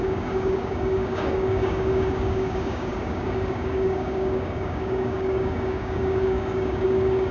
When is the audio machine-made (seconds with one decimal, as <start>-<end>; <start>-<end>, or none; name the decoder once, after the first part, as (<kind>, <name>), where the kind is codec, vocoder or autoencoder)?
0.0-7.3 (codec, DAC)